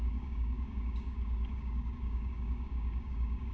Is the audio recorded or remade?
remade